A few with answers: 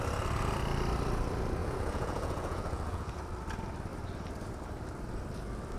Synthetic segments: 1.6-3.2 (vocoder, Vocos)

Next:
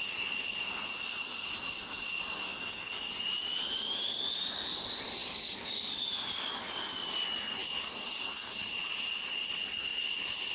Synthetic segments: 2.5-3.1 (codec, DAC); 5.2-5.9

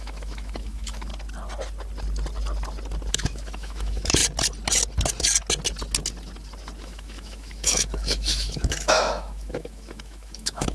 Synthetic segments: 0.0-1.1 (autoencoder, DAC-VAE); 3.1-4.2; 6.8-10.7

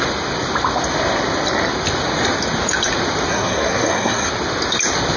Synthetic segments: 3.3-4.3 (codec, SNAC)

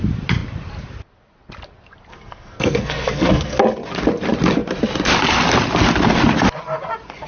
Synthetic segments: 2.1-3.6 (codec, SNAC)